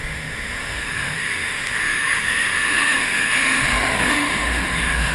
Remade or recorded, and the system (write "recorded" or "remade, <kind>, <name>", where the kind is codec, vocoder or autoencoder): remade, autoencoder, DAC-VAE